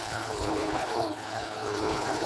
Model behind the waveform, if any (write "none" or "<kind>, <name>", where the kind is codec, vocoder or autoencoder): codec, HILCodec